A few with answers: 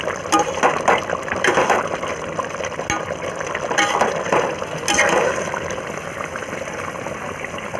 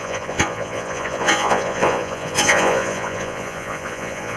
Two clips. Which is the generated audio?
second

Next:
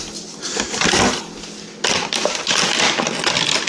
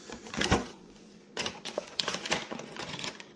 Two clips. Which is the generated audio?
second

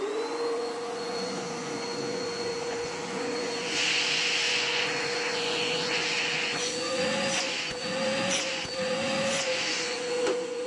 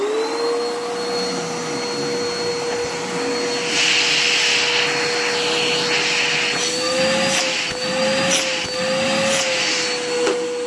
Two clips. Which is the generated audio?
first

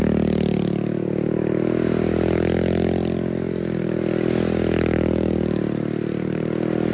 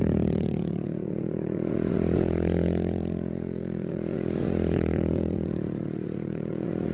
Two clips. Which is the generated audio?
second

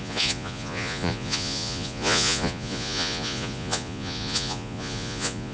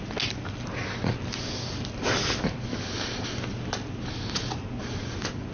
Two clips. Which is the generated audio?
first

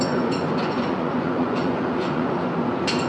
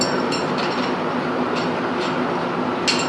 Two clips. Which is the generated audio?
first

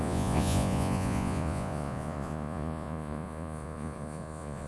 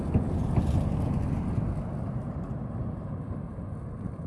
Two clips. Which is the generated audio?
first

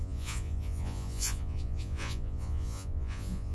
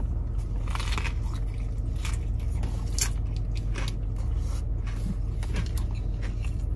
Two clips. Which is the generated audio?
first